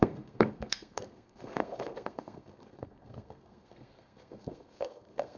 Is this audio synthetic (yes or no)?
yes